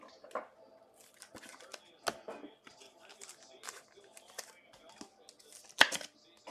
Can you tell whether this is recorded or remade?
recorded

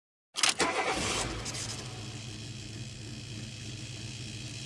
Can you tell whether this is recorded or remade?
recorded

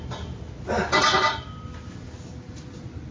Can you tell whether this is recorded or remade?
recorded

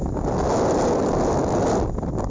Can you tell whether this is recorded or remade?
recorded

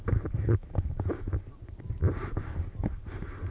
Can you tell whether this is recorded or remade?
remade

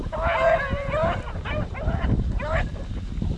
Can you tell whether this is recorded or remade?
recorded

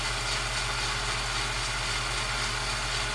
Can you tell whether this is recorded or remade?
recorded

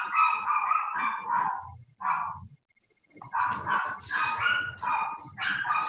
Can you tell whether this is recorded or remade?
recorded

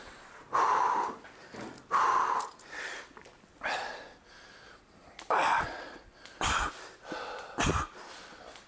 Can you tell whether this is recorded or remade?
recorded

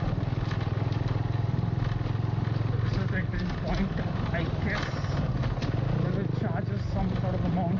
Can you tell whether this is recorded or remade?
recorded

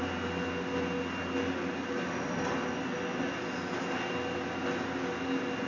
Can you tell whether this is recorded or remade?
recorded